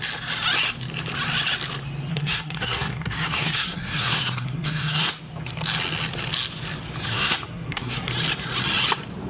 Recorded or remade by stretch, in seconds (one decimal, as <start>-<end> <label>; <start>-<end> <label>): 0.0-2.1 recorded; 2.1-5.1 remade; 5.1-7.1 recorded; 7.1-8.1 remade; 8.1-9.3 recorded